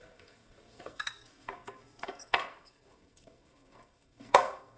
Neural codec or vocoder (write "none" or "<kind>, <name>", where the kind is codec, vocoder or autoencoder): codec, SNAC